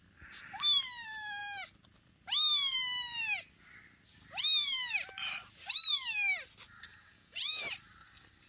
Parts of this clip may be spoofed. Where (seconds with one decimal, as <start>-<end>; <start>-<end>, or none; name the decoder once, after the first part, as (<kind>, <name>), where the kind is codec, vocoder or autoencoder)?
6.9-7.6 (vocoder, Vocos)